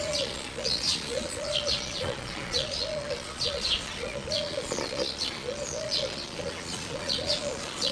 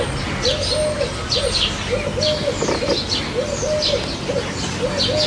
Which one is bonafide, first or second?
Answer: second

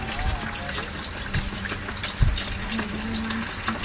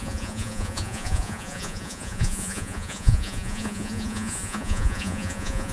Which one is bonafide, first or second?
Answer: first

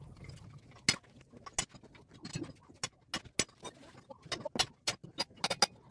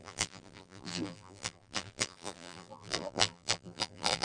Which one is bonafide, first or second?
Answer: first